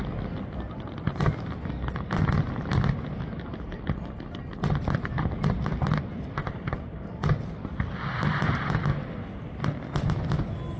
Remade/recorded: recorded